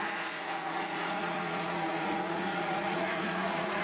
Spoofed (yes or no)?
yes